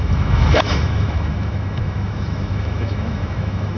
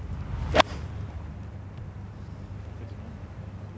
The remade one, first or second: first